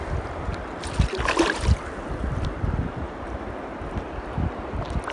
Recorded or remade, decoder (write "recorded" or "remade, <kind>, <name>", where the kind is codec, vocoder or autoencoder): recorded